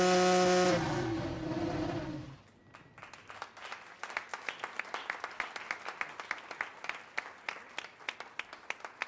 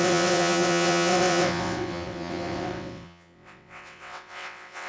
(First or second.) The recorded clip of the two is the first